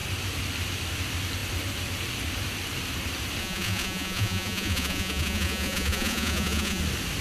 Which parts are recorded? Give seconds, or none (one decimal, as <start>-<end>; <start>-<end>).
0.0-3.4; 6.8-7.2

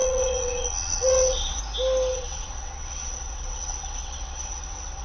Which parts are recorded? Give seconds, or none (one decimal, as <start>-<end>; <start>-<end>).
1.6-2.1